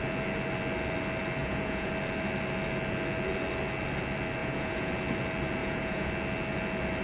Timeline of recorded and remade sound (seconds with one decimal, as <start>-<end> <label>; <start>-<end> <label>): 0.0-1.4 recorded; 1.4-1.9 remade; 1.9-4.4 recorded; 4.4-4.9 remade; 4.9-5.6 recorded; 5.6-6.1 remade; 6.1-7.0 recorded